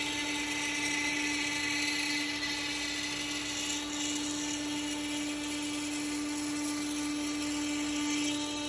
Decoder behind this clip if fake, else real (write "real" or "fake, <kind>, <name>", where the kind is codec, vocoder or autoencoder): real